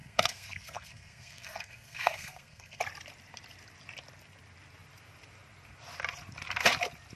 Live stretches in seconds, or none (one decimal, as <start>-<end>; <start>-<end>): 2.8-7.2